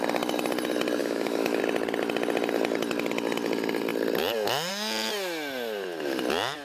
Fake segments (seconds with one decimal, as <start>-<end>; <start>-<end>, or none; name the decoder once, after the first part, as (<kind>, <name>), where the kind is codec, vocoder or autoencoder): 1.0-1.6 (autoencoder, DAC-VAE)